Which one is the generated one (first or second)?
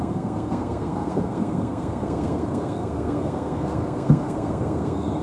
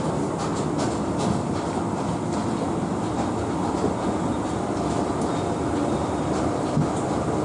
first